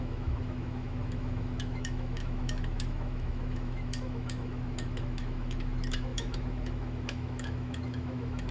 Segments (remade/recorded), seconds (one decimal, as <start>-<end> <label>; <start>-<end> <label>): 0.0-8.5 remade